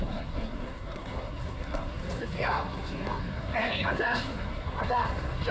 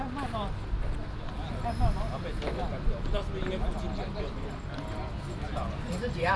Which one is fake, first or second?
first